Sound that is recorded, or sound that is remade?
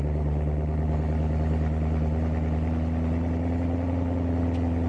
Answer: recorded